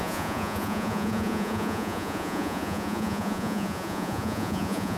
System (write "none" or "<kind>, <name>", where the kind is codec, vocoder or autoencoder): vocoder, Vocos